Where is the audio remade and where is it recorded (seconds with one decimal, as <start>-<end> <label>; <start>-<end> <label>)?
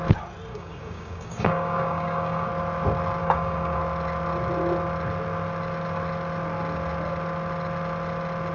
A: 0.0-0.5 recorded; 0.5-2.5 remade; 2.5-3.2 recorded; 3.2-3.8 remade; 3.8-8.5 recorded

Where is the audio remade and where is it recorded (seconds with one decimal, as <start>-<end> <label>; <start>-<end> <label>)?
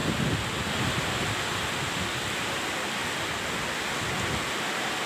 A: 0.0-5.1 recorded